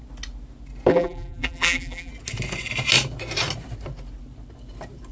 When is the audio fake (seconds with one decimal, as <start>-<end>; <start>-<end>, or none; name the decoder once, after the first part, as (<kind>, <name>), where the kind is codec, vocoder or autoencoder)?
0.9-2.1 (vocoder, BigVGAN v2)